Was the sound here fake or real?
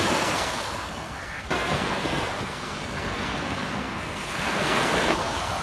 fake